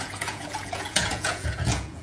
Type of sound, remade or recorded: remade